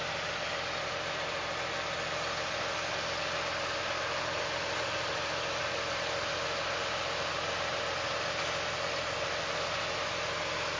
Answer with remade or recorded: recorded